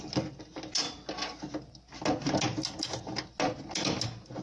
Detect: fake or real real